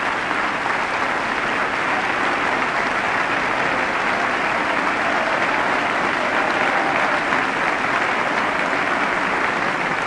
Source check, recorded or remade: recorded